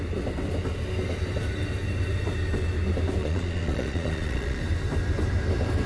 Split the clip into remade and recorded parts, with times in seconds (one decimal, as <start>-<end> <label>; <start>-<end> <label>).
0.0-3.2 recorded; 3.2-4.6 remade; 4.6-5.9 recorded